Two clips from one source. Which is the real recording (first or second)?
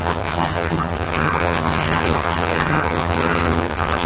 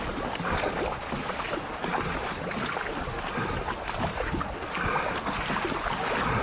second